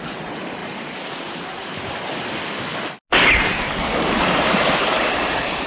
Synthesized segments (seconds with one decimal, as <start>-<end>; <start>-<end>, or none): 0.6-1.9